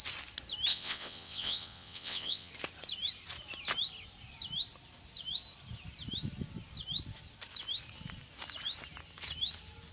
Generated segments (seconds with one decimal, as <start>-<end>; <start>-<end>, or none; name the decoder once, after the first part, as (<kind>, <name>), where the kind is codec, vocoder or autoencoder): 0.7-2.5 (vocoder, WaveNeXt)